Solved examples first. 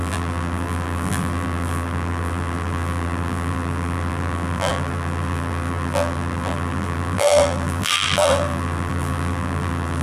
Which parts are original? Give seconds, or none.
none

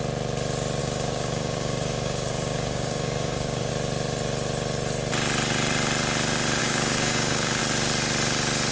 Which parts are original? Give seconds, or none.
0.0-0.8; 3.7-6.6; 7.6-8.7

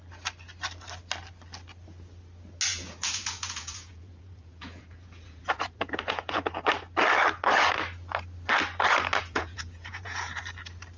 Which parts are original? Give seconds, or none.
0.0-2.7; 6.5-9.2; 10.4-11.0

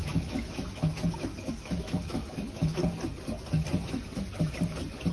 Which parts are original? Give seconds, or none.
2.8-5.1